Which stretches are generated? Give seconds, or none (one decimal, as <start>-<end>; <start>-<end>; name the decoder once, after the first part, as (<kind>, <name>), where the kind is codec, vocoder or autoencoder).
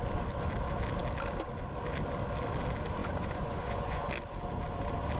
3.0-4.1 (vocoder, Vocos)